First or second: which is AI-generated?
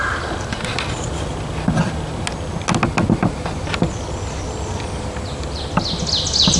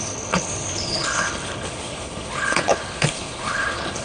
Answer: second